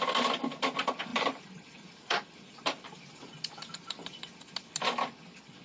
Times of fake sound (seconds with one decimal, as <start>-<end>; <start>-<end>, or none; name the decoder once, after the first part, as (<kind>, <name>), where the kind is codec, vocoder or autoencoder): 1.1-3.7 (vocoder, BigVGAN v2)